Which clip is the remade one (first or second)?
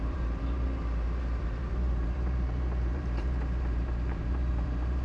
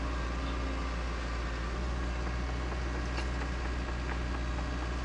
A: first